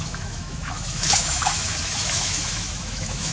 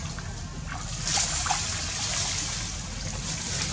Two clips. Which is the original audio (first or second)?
second